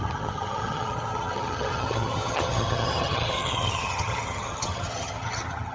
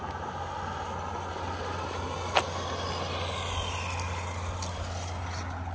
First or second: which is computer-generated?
first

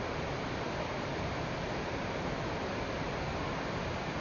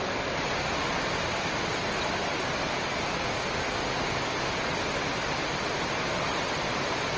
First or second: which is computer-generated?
first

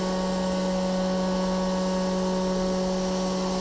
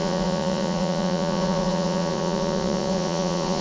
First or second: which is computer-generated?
second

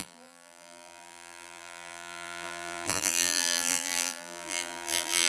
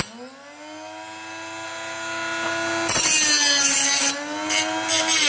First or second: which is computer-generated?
first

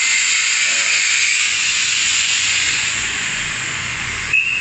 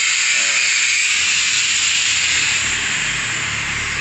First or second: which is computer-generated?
first